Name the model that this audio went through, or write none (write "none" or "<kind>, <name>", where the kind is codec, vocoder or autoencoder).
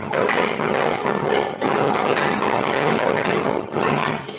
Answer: vocoder, HiFi-GAN